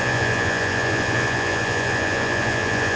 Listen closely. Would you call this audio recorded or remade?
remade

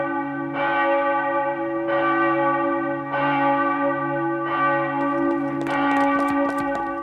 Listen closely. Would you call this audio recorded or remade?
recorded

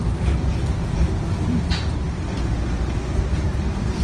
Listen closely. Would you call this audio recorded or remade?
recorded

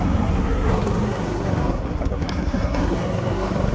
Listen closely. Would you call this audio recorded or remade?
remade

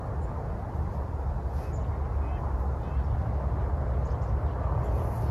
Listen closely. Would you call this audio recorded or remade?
recorded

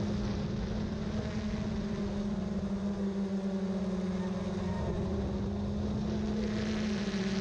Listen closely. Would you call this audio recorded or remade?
recorded